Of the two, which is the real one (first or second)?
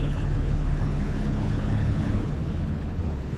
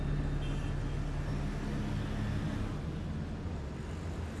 second